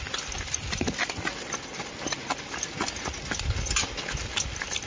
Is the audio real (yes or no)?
yes